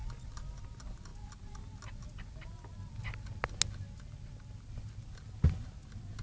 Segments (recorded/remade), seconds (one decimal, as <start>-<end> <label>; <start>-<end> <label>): 0.0-6.2 recorded